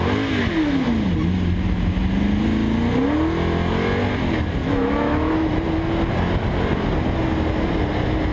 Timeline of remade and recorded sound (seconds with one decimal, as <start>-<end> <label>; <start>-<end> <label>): 0.0-4.6 recorded; 4.6-5.3 remade; 5.3-8.3 recorded